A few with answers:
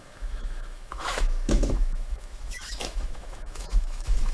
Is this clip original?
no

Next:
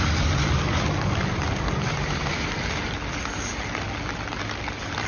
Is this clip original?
yes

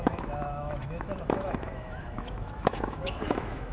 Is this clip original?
no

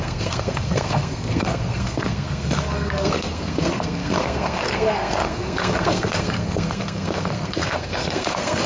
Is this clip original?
no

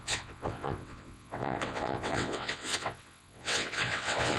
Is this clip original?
no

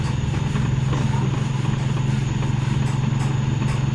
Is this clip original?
yes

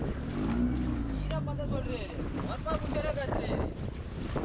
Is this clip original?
yes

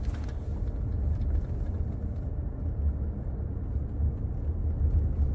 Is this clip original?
yes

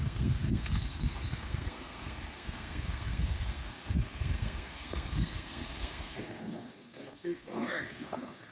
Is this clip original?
no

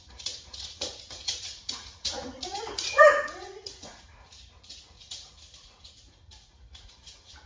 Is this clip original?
no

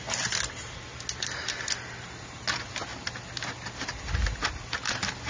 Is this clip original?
yes